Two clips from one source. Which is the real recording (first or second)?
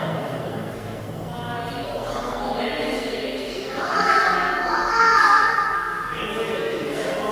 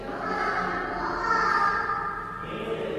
second